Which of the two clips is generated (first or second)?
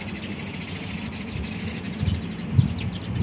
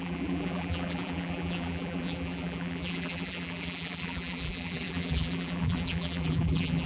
second